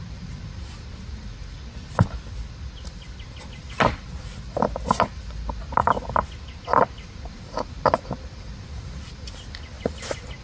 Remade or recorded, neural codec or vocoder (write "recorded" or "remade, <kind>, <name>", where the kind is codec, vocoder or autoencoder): recorded